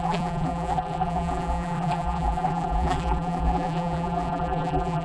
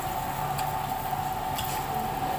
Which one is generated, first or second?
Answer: first